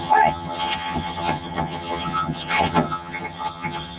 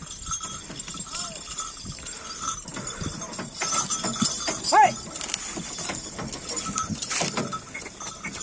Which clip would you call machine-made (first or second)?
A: first